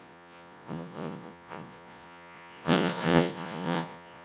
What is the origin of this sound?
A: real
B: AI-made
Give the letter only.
B